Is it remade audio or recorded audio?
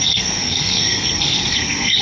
remade